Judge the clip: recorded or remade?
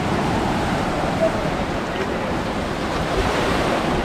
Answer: remade